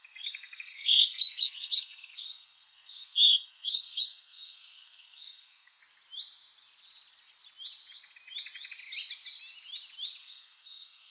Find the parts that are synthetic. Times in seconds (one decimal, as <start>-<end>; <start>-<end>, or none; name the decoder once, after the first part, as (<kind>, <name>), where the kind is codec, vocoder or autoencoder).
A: 0.0-5.8 (codec, SNAC); 10.2-11.1